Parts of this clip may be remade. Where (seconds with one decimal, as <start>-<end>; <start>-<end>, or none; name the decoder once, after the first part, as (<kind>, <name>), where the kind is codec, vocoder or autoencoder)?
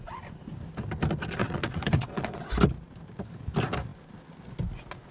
1.4-2.5 (vocoder, WaveNeXt)